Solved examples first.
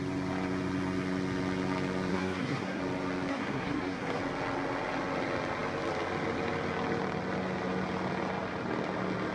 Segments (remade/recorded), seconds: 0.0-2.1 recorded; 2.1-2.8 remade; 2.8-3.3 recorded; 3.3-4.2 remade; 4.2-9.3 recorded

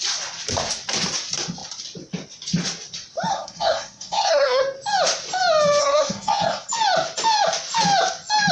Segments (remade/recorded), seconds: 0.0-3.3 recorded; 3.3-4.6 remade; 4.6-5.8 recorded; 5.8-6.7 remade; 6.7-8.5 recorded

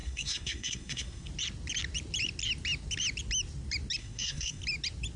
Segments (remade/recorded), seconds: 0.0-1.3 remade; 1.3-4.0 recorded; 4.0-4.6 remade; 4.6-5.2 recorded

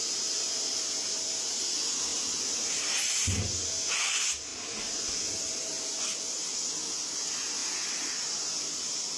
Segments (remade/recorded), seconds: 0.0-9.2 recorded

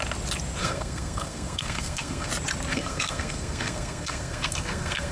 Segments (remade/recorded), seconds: 0.0-0.6 recorded; 0.6-2.3 remade; 2.3-2.7 recorded; 2.7-5.1 remade

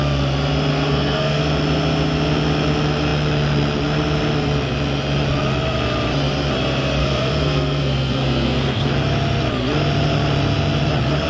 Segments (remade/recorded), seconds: 0.0-0.7 recorded; 0.7-1.4 remade; 1.4-7.0 recorded; 7.0-8.9 remade; 8.9-11.3 recorded